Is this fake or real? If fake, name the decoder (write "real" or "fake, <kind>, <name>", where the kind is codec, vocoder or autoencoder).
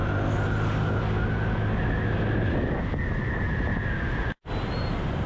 real